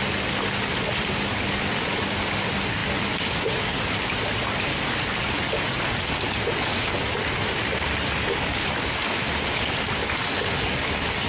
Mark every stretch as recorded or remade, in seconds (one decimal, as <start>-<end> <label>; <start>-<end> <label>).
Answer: 0.0-11.3 recorded

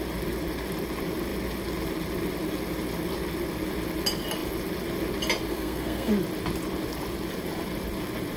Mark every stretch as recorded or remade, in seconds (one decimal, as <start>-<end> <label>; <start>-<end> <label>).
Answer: 0.0-5.5 recorded; 5.5-6.1 remade; 6.1-8.4 recorded

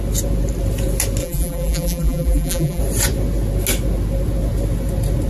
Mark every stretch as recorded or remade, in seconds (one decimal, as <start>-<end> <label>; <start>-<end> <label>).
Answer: 0.0-1.2 recorded; 1.2-2.8 remade; 2.8-5.3 recorded

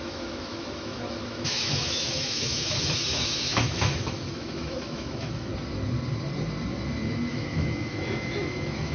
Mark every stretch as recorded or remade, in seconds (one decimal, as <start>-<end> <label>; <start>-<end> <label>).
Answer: 0.0-5.5 remade; 5.5-7.3 recorded; 7.3-8.9 remade

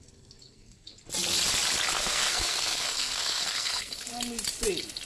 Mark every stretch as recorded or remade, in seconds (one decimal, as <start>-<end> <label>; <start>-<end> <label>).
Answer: 0.0-0.9 remade; 0.9-1.9 recorded; 1.9-4.1 remade; 4.1-5.1 recorded

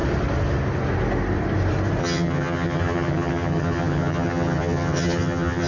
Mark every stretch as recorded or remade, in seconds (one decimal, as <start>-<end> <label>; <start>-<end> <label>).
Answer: 0.0-2.0 recorded; 2.0-5.7 remade

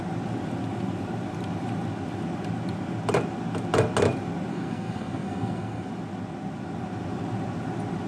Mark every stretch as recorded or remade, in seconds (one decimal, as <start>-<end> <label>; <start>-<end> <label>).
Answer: 0.0-4.5 recorded; 4.5-5.9 remade; 5.9-8.1 recorded

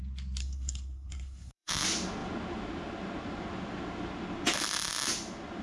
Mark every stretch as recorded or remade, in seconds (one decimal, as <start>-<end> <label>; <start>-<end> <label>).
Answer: 0.0-0.4 recorded; 0.4-1.7 remade; 1.7-5.6 recorded